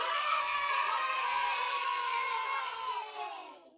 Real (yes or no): no